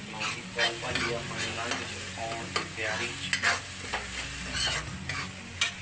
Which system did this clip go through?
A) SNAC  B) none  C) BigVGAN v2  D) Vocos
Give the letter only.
B